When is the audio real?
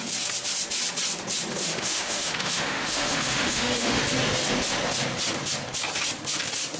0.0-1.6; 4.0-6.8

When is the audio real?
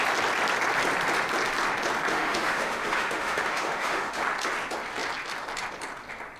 0.0-2.1; 4.2-6.4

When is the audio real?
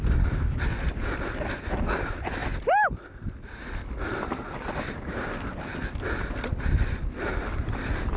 0.0-8.2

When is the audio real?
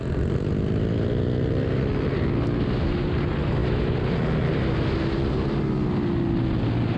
0.0-7.0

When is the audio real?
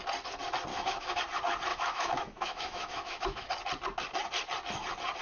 0.0-0.7; 1.2-1.7; 3.5-5.2